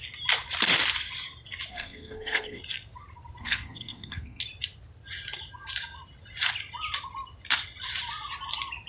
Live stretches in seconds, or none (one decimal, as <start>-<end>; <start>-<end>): 0.0-1.7; 2.6-3.4; 4.4-8.9

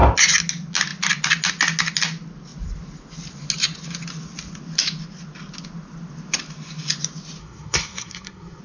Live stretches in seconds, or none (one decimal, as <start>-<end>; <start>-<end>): 0.0-7.4

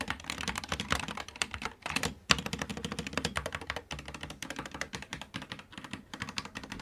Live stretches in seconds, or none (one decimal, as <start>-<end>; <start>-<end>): 2.7-3.6; 5.1-6.8

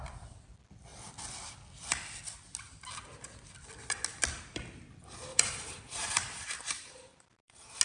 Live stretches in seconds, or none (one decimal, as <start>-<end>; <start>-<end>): 0.0-5.3

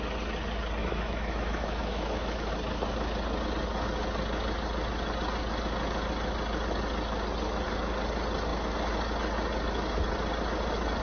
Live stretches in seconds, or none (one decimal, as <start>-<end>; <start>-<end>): 0.0-0.8; 2.5-11.0

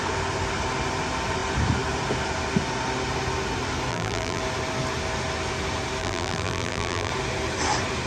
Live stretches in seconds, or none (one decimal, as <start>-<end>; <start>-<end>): 0.0-3.9; 4.4-6.0; 7.1-8.1